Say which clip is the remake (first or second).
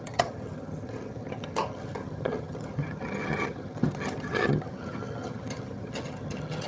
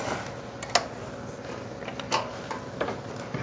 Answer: first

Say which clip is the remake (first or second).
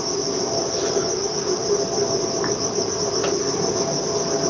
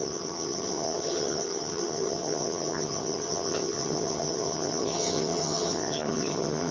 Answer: second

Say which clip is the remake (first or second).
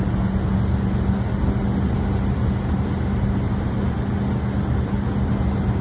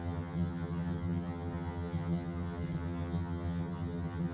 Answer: second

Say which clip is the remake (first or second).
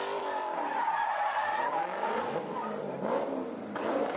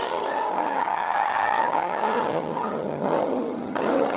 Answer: second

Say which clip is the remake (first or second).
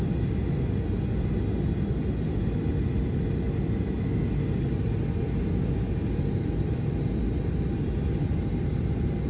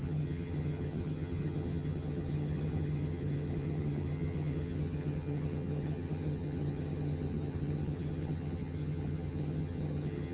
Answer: second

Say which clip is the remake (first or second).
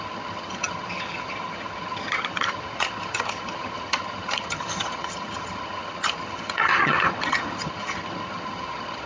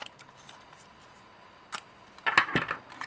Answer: first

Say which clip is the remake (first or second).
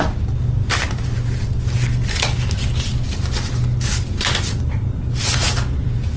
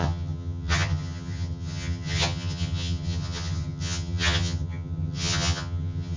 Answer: second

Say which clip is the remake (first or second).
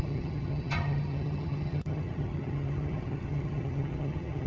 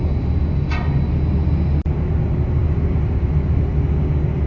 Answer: first